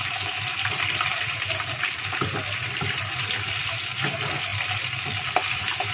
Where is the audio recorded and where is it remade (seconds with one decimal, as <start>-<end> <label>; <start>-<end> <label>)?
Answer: 0.0-4.5 recorded; 4.5-5.5 remade; 5.5-5.9 recorded